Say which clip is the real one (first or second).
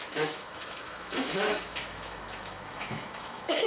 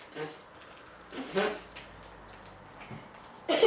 second